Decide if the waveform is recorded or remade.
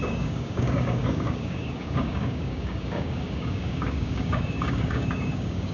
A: remade